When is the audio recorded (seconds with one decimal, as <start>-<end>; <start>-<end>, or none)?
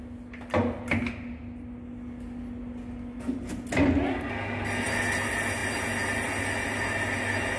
0.0-7.6